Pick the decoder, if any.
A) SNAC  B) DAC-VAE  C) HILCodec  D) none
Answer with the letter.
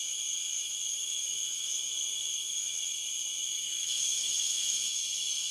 B